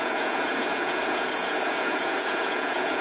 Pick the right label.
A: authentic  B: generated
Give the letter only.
B